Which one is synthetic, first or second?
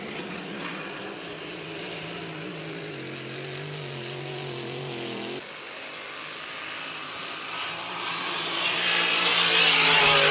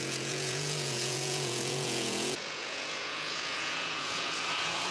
second